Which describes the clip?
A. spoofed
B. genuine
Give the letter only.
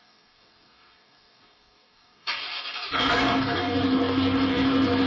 A